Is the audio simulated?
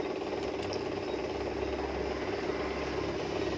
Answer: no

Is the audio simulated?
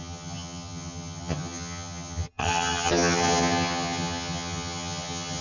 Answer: yes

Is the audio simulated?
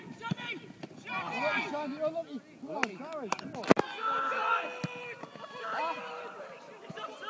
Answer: no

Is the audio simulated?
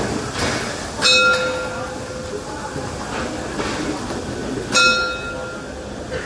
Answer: no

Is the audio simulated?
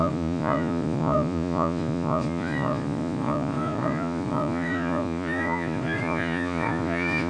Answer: yes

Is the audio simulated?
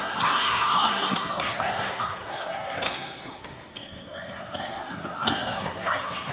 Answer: yes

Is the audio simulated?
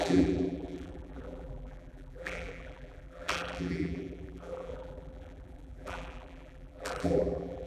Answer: yes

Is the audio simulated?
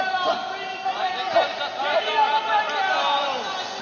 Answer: no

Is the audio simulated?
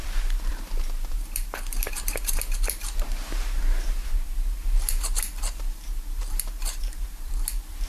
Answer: yes